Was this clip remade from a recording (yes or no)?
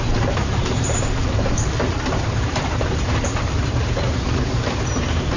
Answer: yes